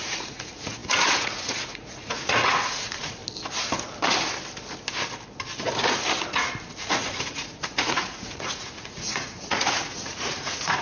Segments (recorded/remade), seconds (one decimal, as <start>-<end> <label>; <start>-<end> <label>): 0.0-3.2 remade; 3.2-6.9 recorded; 6.9-10.8 remade